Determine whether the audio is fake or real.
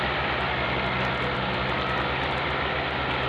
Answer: fake